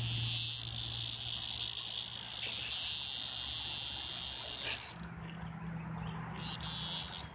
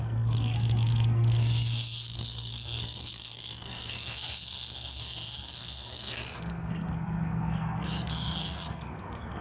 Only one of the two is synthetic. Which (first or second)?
second